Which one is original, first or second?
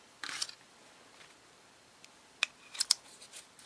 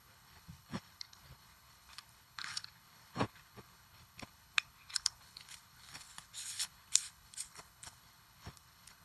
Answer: first